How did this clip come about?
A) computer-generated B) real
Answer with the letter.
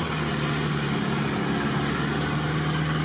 B